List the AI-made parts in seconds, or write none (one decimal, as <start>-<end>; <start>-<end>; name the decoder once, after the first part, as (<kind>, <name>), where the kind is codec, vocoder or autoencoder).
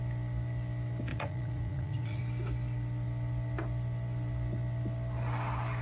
1.1-2.2 (vocoder, Vocos)